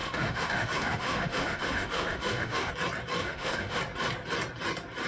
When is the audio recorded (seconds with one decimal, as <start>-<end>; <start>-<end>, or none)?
2.7-3.2; 3.8-5.1